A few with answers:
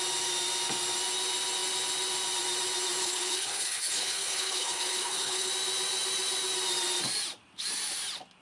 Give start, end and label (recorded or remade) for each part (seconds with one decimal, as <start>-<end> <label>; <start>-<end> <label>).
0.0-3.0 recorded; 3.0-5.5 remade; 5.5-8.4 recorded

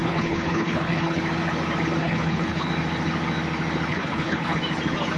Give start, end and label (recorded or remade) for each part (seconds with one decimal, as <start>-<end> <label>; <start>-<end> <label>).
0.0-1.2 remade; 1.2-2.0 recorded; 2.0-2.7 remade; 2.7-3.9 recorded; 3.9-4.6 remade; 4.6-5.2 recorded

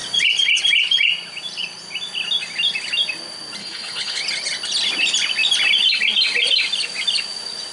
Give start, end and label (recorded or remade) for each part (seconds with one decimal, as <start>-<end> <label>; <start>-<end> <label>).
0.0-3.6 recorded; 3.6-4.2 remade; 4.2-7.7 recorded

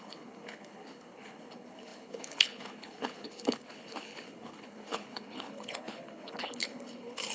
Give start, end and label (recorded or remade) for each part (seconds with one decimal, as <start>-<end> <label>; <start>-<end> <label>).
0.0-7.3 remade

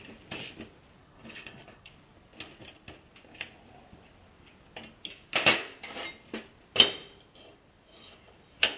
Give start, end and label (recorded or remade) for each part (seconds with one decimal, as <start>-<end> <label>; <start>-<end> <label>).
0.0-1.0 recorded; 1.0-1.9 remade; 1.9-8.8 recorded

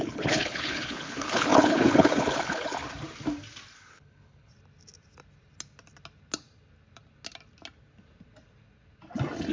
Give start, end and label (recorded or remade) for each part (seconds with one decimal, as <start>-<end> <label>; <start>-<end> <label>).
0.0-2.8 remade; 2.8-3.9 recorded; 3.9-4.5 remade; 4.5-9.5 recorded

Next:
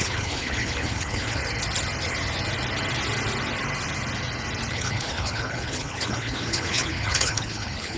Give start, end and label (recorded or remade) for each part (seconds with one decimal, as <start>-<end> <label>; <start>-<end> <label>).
0.0-1.4 remade; 1.4-4.7 recorded; 4.7-8.0 remade

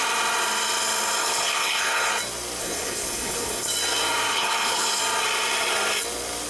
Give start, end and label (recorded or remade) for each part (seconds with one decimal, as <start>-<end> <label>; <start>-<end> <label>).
0.0-1.2 recorded; 1.2-2.1 remade; 2.1-2.6 recorded; 2.6-3.7 remade; 3.7-4.3 recorded; 4.3-5.0 remade; 5.0-6.5 recorded